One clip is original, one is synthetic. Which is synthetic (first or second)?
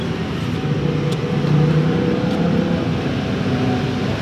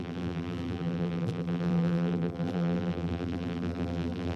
second